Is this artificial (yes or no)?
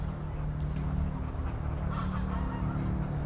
no